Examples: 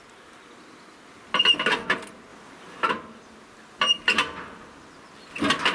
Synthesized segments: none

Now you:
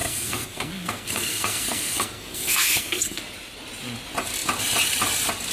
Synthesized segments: 0.0-3.2 (codec, SNAC)

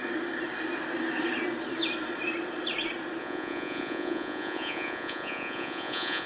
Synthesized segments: 3.2-6.3 (vocoder, Vocos)